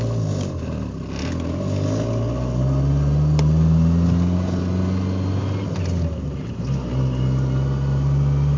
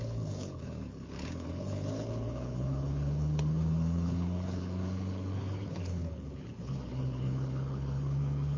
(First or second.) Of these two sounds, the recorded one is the first